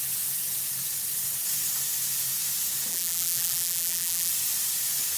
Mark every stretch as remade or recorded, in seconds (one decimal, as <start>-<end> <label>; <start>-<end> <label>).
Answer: 0.0-2.9 recorded; 2.9-4.3 remade; 4.3-5.2 recorded